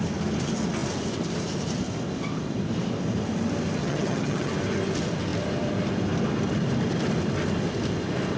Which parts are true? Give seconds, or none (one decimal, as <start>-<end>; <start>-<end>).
0.0-3.8; 4.5-8.4